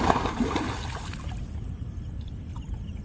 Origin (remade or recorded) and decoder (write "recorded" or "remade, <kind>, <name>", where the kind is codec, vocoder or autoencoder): recorded